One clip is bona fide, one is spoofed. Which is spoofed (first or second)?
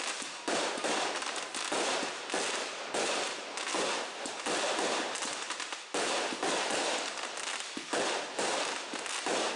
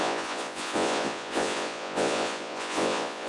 second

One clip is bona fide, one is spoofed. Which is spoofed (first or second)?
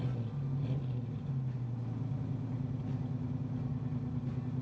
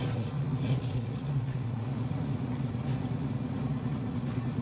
second